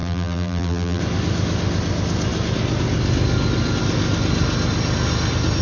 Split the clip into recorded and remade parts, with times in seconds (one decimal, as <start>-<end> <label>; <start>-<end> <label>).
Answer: 0.0-1.0 remade; 1.0-5.6 recorded